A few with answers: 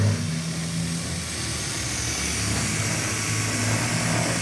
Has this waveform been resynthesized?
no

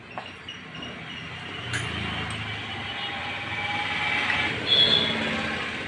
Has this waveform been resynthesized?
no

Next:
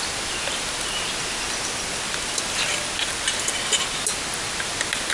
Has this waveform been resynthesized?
no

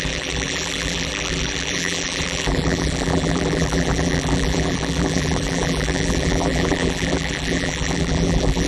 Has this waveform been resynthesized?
yes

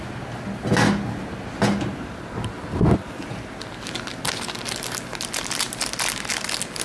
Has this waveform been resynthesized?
no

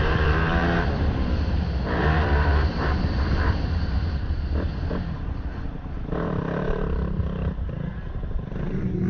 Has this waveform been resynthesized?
yes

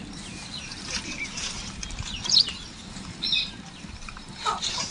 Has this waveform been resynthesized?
yes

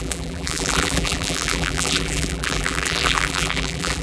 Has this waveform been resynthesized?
yes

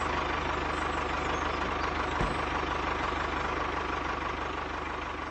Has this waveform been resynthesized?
no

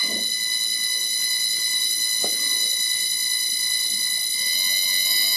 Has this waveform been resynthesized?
no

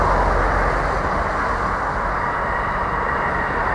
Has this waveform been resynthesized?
no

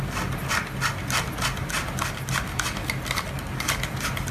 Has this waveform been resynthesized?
no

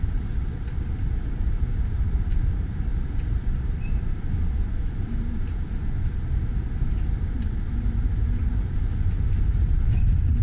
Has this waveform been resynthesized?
yes